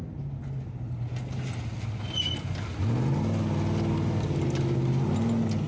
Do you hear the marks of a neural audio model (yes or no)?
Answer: no